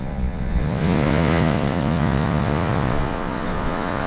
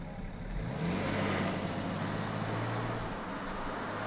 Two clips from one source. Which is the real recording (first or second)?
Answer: second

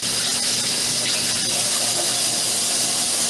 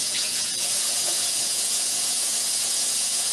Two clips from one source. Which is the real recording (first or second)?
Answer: first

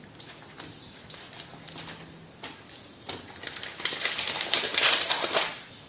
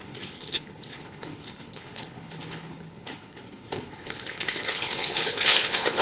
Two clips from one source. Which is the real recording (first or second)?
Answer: first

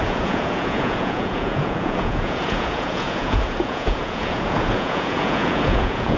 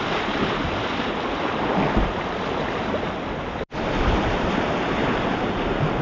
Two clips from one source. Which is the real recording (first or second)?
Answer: second